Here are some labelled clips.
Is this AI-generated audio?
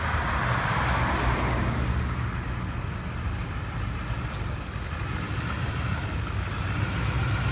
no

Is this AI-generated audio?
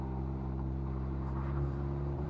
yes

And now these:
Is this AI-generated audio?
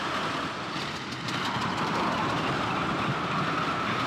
no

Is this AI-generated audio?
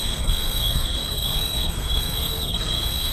yes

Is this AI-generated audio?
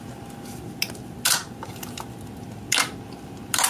no